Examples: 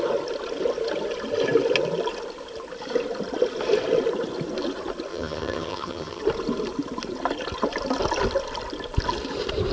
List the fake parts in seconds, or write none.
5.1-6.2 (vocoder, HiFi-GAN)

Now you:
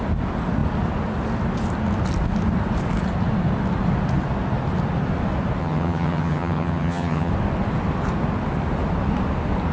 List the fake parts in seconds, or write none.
5.6-7.3 (vocoder, HiFi-GAN)

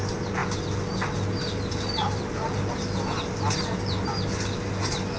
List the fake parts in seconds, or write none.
none

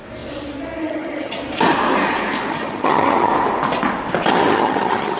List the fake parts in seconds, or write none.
0.8-1.4 (vocoder, HiFi-GAN); 2.5-3.3; 4.3-5.2

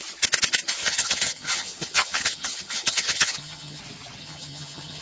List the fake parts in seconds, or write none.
0.8-3.8 (vocoder, HiFi-GAN); 4.2-5.0

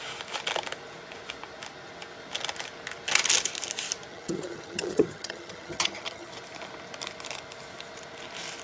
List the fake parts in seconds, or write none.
4.1-6.3 (vocoder, HiFi-GAN)

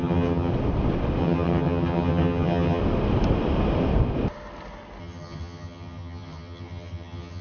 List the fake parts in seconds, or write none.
0.0-0.5 (vocoder, HiFi-GAN); 1.2-2.8; 5.0-7.4

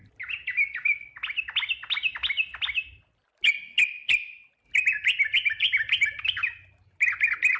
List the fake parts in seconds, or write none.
none